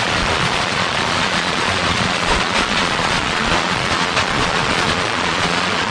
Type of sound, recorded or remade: remade